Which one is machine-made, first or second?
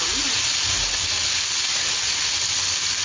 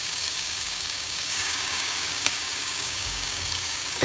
second